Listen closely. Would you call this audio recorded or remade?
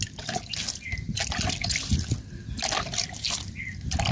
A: recorded